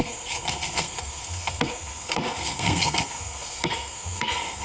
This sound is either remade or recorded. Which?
remade